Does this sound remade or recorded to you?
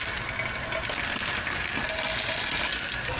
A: recorded